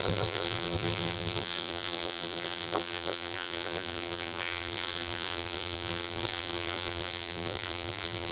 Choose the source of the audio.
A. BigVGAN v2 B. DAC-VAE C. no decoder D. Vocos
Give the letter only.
A